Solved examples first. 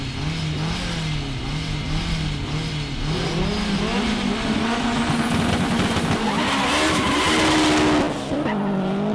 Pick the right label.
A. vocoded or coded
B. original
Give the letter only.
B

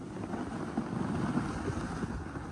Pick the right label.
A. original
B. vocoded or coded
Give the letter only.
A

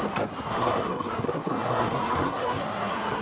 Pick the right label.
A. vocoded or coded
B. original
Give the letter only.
A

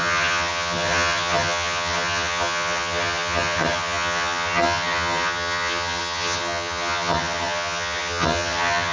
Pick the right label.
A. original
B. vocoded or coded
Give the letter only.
B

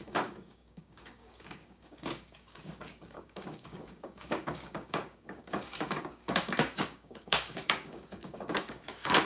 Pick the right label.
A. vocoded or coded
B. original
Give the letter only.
A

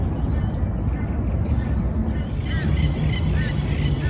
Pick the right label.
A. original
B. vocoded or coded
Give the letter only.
A